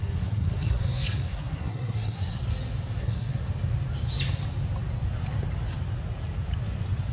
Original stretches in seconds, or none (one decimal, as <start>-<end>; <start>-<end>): 2.4-3.0; 3.4-7.1